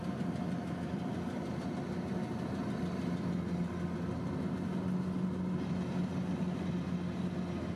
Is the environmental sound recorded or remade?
recorded